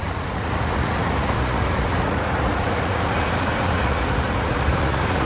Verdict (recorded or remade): remade